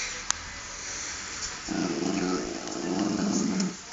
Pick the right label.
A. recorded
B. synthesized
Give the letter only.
A